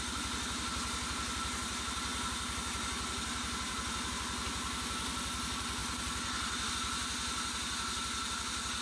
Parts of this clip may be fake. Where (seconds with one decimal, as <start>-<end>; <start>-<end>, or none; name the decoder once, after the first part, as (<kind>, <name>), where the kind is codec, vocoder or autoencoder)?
2.1-4.1 (vocoder, BigVGAN v2); 5.8-6.7